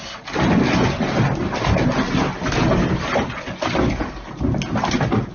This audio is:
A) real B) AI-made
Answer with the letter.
A